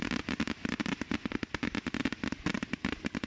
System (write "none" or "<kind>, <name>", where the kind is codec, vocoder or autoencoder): none